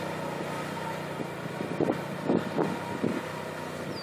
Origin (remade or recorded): recorded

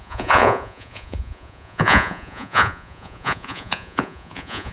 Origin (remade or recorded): remade